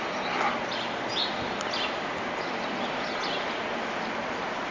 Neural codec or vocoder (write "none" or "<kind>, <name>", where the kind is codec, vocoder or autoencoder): none